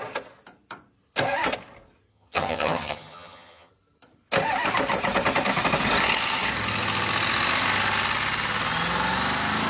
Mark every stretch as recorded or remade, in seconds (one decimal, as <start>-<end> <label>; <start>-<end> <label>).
0.0-2.1 recorded; 2.1-3.7 remade; 3.7-9.7 recorded